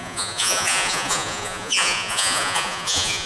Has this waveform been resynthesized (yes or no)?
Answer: yes